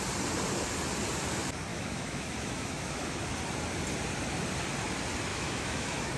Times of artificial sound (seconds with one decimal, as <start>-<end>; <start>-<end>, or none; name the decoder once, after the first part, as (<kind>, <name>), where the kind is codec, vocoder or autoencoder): 1.7-3.2 (autoencoder, DAC-VAE); 5.3-6.2

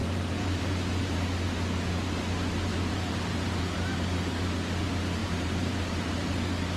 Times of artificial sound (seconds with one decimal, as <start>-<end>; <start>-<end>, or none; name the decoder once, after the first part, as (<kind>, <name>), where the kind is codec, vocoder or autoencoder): 0.0-1.2 (vocoder, BigVGAN v2); 2.7-3.6; 5.2-6.1

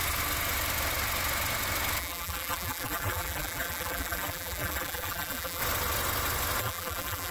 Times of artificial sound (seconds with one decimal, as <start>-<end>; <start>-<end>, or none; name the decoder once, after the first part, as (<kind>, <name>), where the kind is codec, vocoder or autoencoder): 2.0-5.6 (vocoder, BigVGAN v2); 6.6-7.3

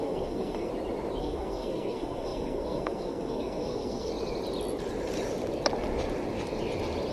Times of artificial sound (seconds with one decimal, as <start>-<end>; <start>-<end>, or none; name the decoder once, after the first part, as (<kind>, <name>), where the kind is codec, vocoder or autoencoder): 0.0-0.7 (codec, SNAC); 1.2-4.1

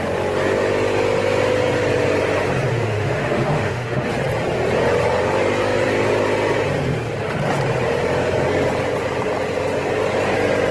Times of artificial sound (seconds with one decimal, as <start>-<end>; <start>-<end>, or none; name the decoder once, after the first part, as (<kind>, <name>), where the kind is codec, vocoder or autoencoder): 2.7-4.1 (autoencoder, DAC-VAE)

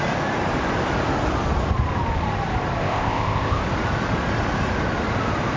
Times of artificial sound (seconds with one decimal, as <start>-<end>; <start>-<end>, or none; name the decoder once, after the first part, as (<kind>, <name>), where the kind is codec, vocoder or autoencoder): 2.8-3.6 (codec, ZipCodec)